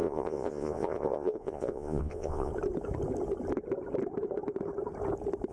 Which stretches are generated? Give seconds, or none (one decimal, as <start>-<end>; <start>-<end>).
0.0-2.5